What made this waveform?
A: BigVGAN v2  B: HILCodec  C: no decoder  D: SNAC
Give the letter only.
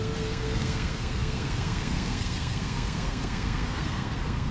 D